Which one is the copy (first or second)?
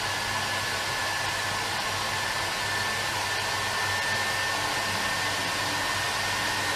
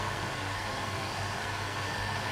second